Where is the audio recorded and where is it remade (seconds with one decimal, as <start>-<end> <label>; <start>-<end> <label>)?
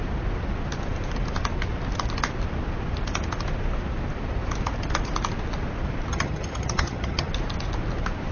0.0-6.1 recorded; 6.1-7.3 remade; 7.3-8.3 recorded